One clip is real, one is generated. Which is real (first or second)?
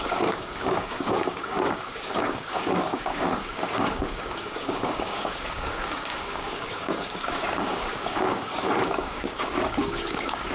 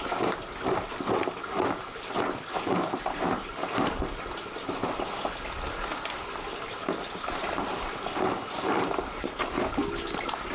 second